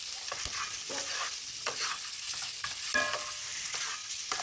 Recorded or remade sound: recorded